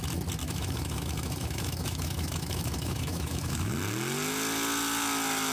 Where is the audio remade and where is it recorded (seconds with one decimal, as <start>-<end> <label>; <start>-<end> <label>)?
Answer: 0.0-0.4 recorded; 0.4-3.7 remade; 3.7-5.5 recorded